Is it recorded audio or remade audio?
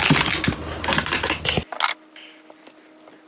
recorded